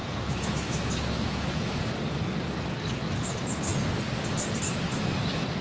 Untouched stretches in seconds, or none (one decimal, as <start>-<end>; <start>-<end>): 1.8-5.6